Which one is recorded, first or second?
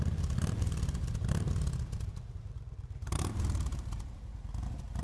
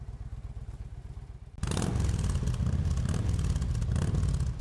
second